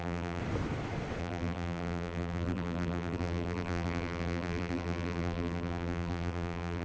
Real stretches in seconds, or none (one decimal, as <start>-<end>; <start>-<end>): 0.4-1.2